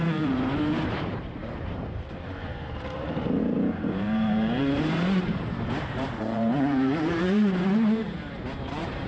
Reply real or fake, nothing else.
fake